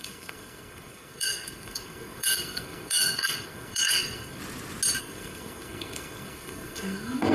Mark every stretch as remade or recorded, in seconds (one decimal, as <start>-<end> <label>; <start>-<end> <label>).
0.0-4.4 remade; 4.4-5.0 recorded; 5.0-7.3 remade

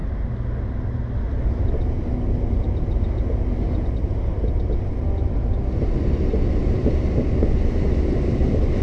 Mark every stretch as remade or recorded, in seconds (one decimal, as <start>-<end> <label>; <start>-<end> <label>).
0.0-8.8 recorded

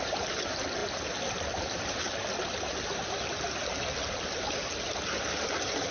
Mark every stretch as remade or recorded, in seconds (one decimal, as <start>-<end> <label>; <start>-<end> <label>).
0.0-5.9 recorded